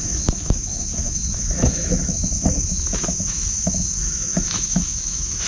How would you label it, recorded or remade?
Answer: remade